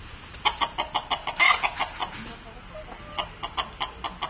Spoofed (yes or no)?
no